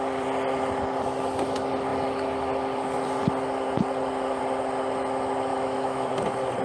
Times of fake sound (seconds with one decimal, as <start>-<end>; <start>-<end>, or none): 5.5-6.1